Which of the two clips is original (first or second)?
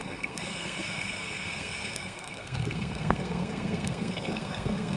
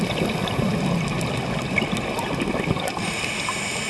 second